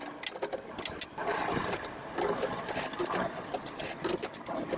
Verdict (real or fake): real